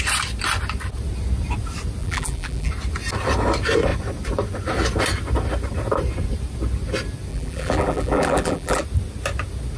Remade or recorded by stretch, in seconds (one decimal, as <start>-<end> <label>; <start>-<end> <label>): 0.0-2.0 recorded; 2.0-2.7 remade; 2.7-7.3 recorded; 7.3-8.8 remade; 8.8-9.8 recorded